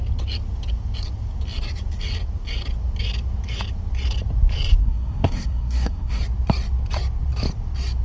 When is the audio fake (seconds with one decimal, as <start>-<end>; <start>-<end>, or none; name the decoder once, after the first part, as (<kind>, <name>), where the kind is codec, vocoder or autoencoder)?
4.8-6.2 (codec, SNAC)